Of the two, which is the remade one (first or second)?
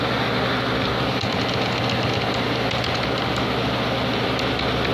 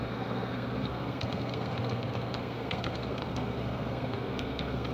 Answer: second